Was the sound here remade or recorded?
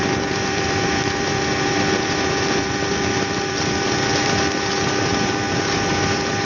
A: remade